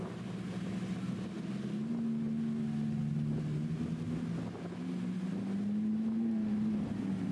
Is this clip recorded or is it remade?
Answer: recorded